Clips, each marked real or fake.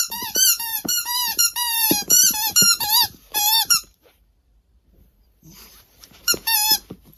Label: fake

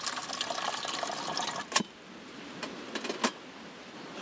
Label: real